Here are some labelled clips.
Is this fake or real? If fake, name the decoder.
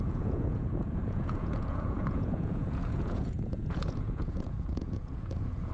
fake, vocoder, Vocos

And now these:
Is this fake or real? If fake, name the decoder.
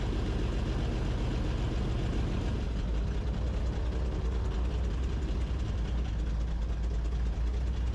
real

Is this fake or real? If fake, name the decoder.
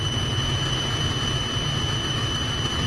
real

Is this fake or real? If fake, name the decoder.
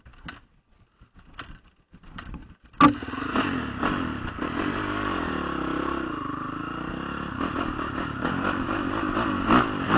real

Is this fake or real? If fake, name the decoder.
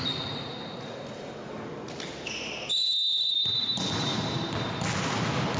real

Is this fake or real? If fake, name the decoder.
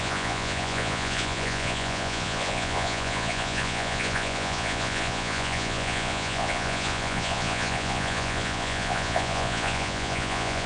fake, vocoder, Vocos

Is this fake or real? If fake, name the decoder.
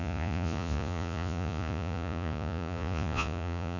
fake, vocoder, Vocos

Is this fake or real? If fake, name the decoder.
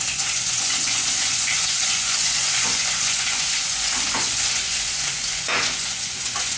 fake, vocoder, Vocos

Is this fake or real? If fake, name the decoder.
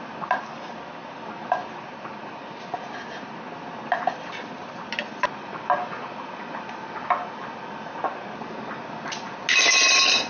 real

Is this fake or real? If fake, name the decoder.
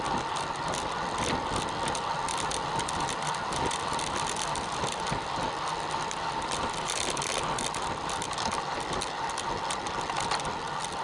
real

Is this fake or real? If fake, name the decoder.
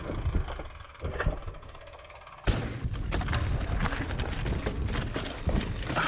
real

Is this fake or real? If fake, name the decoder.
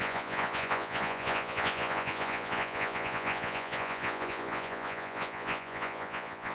fake, vocoder, Vocos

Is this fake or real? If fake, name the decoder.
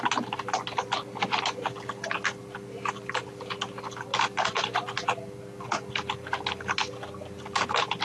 real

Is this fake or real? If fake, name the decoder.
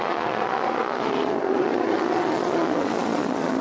fake, vocoder, Vocos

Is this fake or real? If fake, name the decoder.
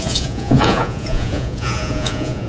fake, vocoder, Vocos